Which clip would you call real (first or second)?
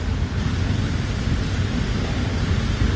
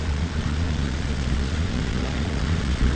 first